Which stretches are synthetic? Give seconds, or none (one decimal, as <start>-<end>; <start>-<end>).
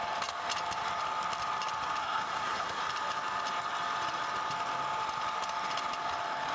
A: 2.0-2.8